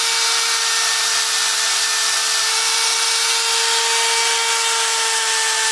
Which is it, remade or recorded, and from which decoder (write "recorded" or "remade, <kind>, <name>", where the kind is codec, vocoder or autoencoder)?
recorded